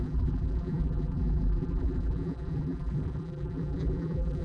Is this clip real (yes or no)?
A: no